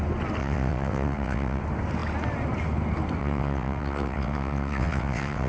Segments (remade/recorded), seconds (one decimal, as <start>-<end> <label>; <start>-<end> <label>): 0.0-0.4 recorded; 0.4-1.6 remade; 1.6-3.2 recorded; 3.2-5.5 remade